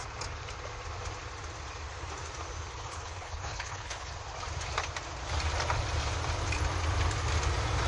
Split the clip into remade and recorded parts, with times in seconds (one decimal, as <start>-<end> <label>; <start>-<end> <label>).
0.0-2.7 recorded; 2.7-4.1 remade; 4.1-7.9 recorded